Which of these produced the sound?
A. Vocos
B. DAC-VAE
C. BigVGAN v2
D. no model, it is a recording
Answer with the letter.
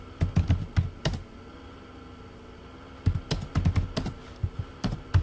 D